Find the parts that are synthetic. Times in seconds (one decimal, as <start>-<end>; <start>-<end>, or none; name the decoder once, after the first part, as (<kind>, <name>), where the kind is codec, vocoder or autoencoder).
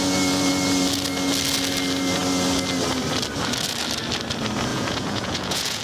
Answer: 4.7-5.8 (vocoder, Vocos)